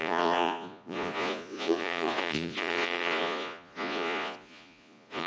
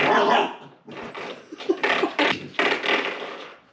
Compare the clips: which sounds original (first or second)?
second